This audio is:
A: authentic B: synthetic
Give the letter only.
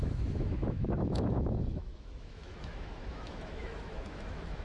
B